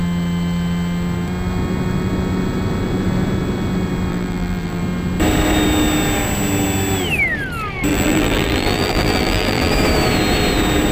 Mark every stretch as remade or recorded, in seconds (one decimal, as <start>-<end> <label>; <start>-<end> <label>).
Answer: 0.0-4.1 recorded; 4.1-4.8 remade; 4.8-7.9 recorded; 7.9-9.7 remade; 9.7-10.9 recorded